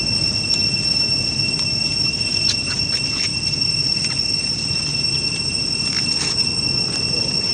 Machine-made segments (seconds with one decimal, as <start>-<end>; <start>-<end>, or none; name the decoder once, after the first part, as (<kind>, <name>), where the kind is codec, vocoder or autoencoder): none